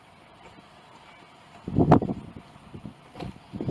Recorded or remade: recorded